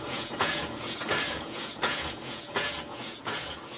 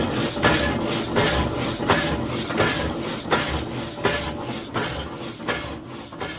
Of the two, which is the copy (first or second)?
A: first